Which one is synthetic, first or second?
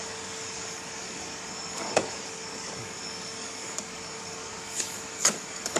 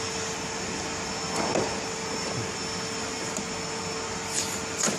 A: first